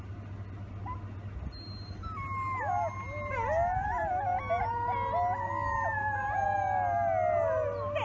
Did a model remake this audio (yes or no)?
no